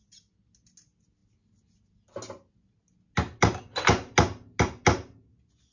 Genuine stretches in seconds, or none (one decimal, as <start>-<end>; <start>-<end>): 0.0-5.7

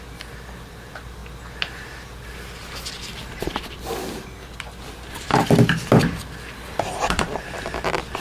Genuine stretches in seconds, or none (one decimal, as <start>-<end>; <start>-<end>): 1.2-2.0; 2.6-4.9

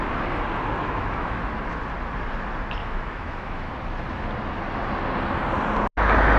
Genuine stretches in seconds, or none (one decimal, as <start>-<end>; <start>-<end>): 0.0-0.8; 1.4-2.8; 3.7-6.4

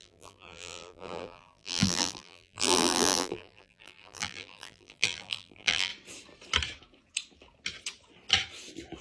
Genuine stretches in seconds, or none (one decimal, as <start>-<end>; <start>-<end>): 5.9-9.0

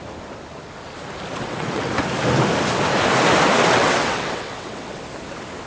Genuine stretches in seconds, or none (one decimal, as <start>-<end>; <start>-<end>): 0.0-1.4; 2.0-3.6; 5.0-5.7

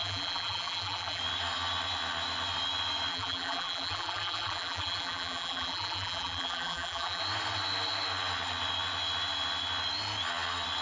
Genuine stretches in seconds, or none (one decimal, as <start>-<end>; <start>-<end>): 1.2-3.1; 7.2-10.8

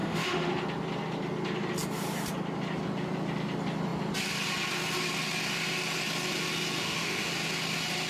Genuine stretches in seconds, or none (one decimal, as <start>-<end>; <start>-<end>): 0.5-6.8; 7.3-8.1

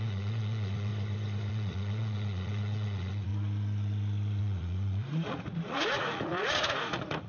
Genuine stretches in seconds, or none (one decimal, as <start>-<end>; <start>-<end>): 0.9-1.5; 3.3-4.4